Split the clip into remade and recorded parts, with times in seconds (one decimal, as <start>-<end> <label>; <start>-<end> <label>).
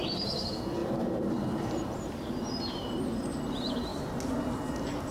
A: 0.0-0.8 recorded; 0.8-3.4 remade; 3.4-5.1 recorded